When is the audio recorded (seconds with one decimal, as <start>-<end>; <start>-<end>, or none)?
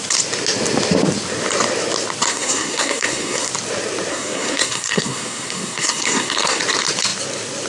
0.0-2.3; 3.5-4.1; 6.6-7.7